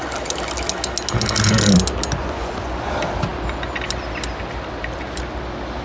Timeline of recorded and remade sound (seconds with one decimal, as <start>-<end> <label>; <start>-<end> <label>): 0.0-2.2 recorded; 2.2-2.9 remade; 2.9-5.8 recorded